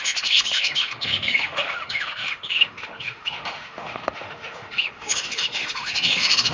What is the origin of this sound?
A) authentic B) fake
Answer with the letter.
B